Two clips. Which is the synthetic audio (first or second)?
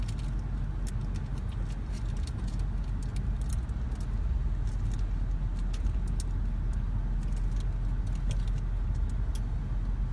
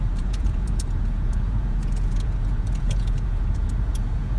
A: second